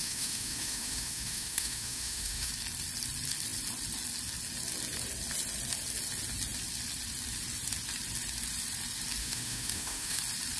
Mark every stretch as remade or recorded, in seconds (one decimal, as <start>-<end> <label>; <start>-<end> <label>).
0.0-2.5 remade; 2.5-9.2 recorded; 9.2-10.2 remade; 10.2-10.6 recorded